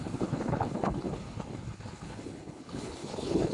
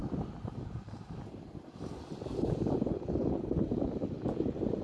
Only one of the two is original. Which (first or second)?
second